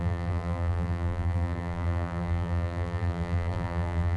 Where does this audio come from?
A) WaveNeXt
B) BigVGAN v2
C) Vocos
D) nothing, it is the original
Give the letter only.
B